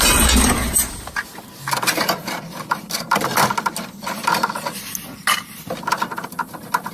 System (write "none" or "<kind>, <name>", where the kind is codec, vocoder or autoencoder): none